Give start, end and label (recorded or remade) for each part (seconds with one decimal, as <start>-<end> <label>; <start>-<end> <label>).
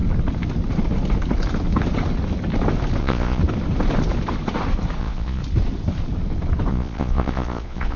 0.0-3.0 recorded; 3.0-3.4 remade; 3.4-5.0 recorded; 5.0-5.4 remade; 5.4-6.7 recorded; 6.7-8.0 remade